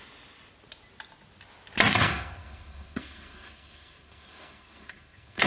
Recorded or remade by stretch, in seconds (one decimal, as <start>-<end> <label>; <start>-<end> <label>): 0.0-1.9 recorded; 1.9-5.5 remade